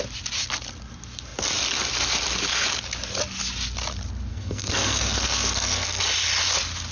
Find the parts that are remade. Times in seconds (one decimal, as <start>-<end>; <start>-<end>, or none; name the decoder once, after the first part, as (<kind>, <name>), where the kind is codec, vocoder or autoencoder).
4.3-6.0 (codec, SNAC)